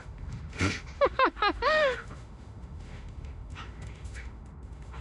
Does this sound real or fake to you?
fake